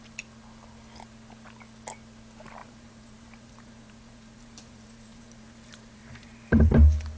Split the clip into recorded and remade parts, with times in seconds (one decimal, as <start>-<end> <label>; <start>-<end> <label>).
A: 0.0-2.6 recorded; 2.6-6.7 remade; 6.7-7.2 recorded